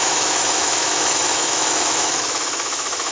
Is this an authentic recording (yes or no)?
no